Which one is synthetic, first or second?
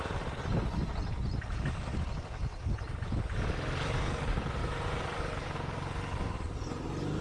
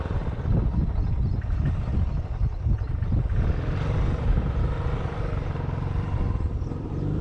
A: second